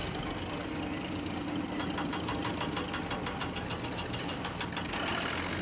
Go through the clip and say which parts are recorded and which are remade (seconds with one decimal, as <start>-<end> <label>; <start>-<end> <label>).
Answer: 0.0-5.6 recorded